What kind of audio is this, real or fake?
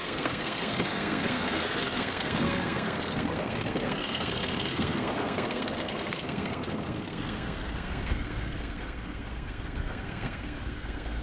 fake